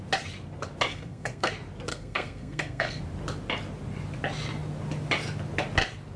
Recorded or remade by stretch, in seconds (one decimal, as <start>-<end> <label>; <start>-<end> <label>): 0.0-0.9 recorded; 0.9-1.5 remade; 1.5-1.9 recorded; 1.9-3.0 remade; 3.0-6.2 recorded